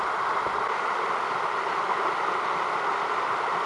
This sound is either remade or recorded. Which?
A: recorded